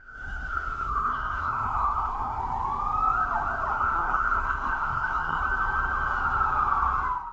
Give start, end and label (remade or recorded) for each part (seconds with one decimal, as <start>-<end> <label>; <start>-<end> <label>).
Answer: 0.0-2.4 remade; 2.4-3.7 recorded; 3.7-5.4 remade; 5.4-7.3 recorded